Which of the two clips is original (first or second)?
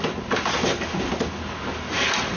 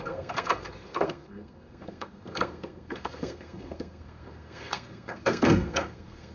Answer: first